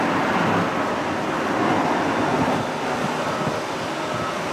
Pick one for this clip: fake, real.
real